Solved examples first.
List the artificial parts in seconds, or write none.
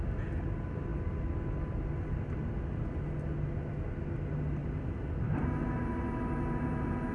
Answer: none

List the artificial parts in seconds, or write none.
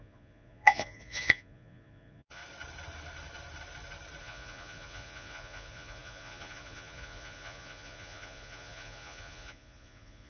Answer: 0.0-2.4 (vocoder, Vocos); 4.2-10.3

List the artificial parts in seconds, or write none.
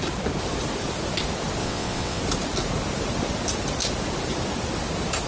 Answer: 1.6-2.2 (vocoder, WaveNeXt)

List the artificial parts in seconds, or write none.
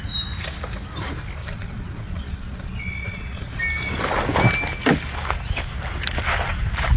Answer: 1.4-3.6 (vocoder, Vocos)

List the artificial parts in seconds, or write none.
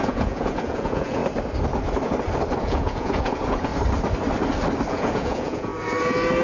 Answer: 0.0-1.2 (vocoder, Vocos); 2.6-3.7; 4.9-5.7